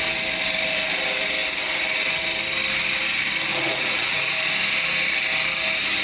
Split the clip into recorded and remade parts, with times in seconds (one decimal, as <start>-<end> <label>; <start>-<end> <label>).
0.0-3.5 recorded; 3.5-4.2 remade; 4.2-6.0 recorded

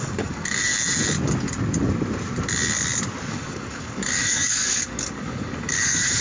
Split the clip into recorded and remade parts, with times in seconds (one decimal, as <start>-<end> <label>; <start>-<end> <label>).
0.0-0.7 remade; 0.7-3.3 recorded; 3.3-6.2 remade

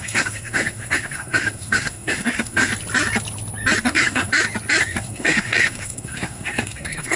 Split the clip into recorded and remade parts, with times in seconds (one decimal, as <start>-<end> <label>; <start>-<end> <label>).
0.0-2.7 remade; 2.7-3.8 recorded; 3.8-4.3 remade; 4.3-4.8 recorded; 4.8-7.2 remade

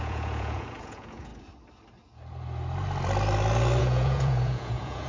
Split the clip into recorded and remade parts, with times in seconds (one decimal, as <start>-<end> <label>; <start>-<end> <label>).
0.0-1.3 remade; 1.3-3.8 recorded; 3.8-5.1 remade

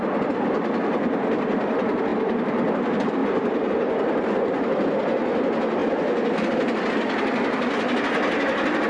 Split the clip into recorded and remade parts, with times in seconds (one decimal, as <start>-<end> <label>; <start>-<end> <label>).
0.0-8.9 recorded

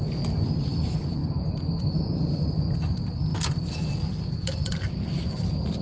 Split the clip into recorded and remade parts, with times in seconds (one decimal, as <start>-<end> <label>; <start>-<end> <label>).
0.0-5.8 recorded

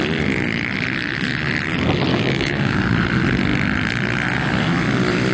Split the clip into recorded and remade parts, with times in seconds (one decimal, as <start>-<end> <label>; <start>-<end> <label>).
0.0-2.1 recorded; 2.1-2.8 remade; 2.8-5.3 recorded

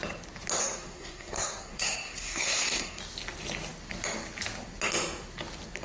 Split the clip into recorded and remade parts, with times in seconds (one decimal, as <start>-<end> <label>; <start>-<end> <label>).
0.0-0.6 recorded; 0.6-3.0 remade; 3.0-5.8 recorded